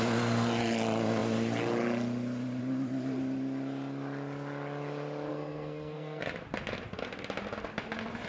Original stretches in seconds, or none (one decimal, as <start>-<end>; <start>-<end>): 0.0-5.3; 6.2-8.3